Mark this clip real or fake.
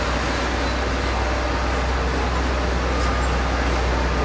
real